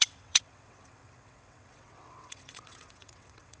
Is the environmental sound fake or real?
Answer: fake